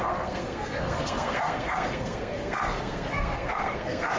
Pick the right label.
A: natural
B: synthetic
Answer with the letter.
B